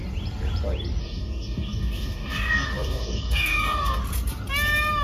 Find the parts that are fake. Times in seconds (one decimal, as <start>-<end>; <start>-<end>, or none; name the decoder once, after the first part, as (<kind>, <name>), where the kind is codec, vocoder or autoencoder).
1.0-4.0 (codec, DAC)